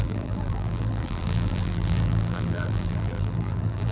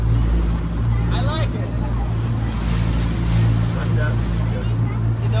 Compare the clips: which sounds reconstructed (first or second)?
first